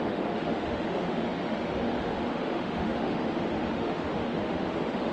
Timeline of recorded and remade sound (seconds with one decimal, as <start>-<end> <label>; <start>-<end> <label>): 0.0-5.1 remade